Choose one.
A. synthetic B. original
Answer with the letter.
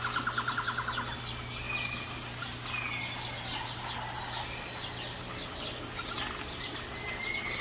B